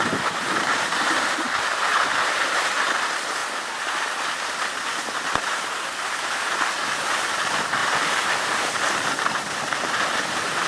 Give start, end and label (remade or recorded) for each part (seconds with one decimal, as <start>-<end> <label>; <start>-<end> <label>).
0.0-7.8 recorded; 7.8-8.7 remade; 8.7-10.7 recorded